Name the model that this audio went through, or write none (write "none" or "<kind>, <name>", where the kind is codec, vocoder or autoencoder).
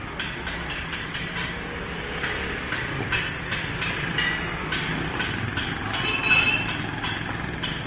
none